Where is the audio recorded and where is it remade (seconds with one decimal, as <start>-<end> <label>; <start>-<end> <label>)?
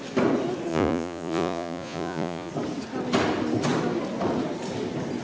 0.0-0.7 recorded; 0.7-2.5 remade; 2.5-5.2 recorded